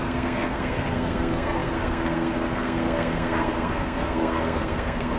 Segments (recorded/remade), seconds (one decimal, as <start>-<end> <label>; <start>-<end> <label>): 0.0-5.2 remade